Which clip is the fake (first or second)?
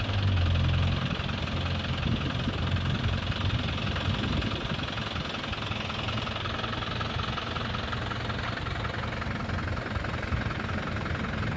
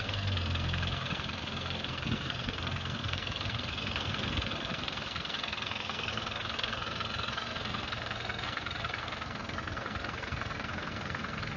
second